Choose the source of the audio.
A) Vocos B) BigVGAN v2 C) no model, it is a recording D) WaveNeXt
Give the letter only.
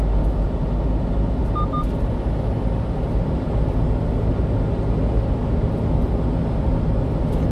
C